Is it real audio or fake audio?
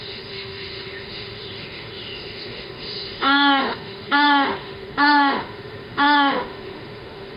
fake